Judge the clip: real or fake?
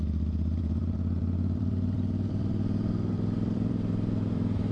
fake